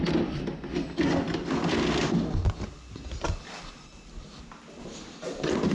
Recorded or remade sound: recorded